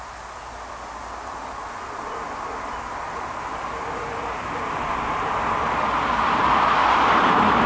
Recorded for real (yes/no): yes